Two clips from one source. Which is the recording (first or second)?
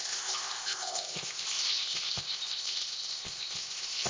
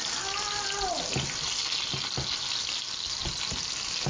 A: second